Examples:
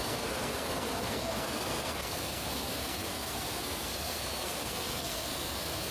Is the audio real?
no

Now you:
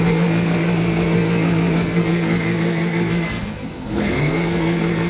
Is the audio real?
no